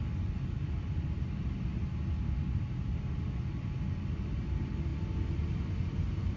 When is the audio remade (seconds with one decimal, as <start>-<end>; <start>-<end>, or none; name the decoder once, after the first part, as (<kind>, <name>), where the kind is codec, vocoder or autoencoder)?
none